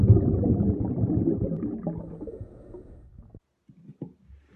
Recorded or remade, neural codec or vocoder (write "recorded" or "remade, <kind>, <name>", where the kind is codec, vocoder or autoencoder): recorded